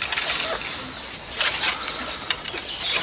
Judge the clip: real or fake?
real